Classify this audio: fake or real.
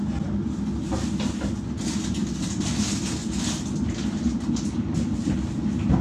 real